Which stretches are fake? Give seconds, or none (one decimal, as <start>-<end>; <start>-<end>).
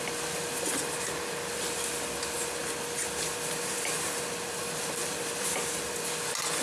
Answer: 2.6-4.6; 5.0-6.1